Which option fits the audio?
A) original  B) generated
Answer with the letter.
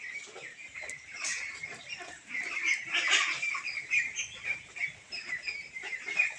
B